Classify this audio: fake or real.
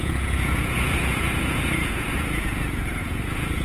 fake